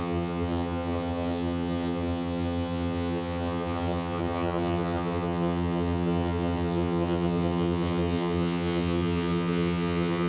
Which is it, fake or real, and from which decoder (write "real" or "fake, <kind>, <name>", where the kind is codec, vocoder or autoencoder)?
fake, vocoder, HiFi-GAN